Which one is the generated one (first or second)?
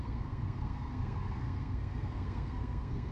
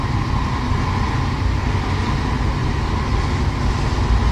first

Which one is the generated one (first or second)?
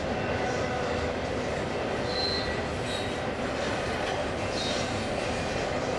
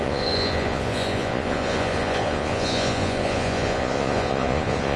second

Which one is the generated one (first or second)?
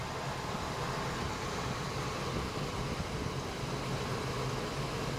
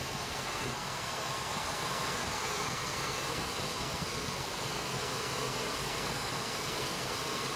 second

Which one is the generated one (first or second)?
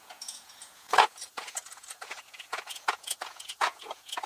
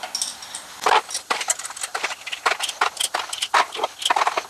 first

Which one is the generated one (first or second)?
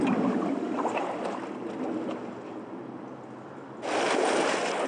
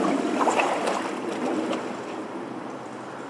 second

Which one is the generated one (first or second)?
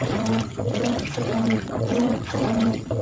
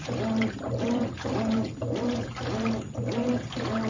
first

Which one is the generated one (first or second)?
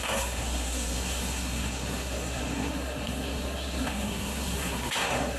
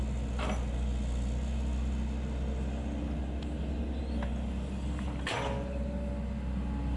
first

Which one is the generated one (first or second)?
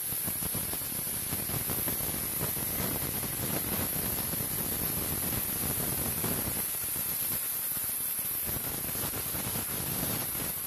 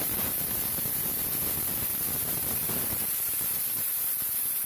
second